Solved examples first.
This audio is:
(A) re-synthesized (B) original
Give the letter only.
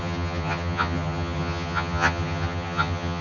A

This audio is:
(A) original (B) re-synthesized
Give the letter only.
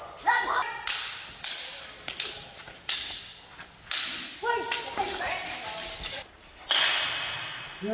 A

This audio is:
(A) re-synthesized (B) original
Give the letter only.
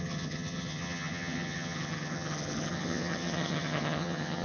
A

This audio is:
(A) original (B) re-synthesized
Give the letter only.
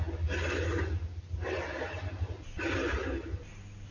A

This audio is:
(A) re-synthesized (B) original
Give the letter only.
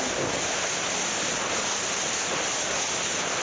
B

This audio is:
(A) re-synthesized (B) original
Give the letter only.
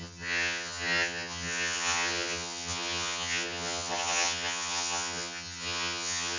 A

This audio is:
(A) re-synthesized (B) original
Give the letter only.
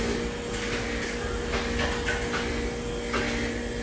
B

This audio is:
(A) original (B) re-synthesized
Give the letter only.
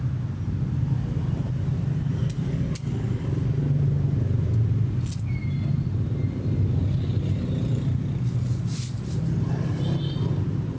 A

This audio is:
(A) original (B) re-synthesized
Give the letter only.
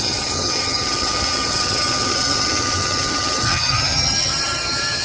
B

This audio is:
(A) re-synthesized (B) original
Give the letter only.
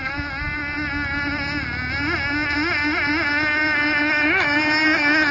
B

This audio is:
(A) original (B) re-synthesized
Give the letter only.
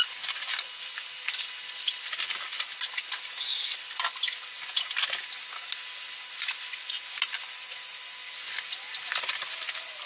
A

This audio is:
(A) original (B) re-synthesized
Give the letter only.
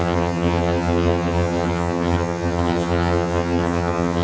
B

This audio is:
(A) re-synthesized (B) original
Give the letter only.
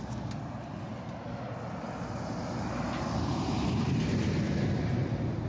B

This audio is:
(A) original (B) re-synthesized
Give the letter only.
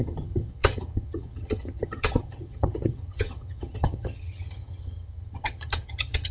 B